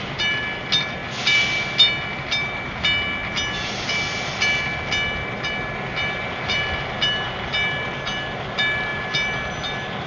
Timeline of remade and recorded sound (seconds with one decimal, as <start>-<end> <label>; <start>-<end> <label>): 0.0-10.1 recorded